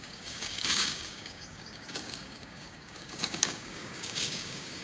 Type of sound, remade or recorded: remade